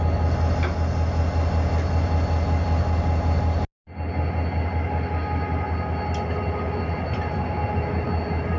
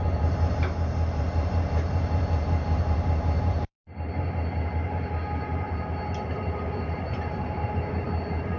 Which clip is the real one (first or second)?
first